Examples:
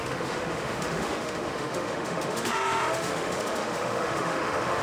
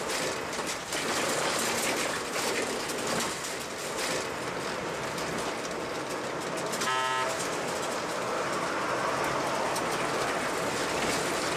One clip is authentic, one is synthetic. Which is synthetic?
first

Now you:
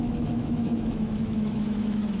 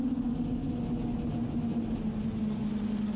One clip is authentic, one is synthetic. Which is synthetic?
first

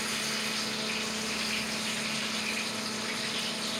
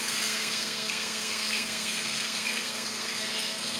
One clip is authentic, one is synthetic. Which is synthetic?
second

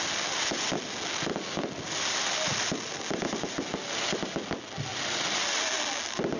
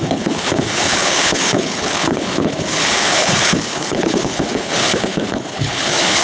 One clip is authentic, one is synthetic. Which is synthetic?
second